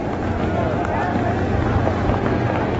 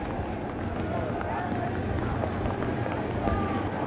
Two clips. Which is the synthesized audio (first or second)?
second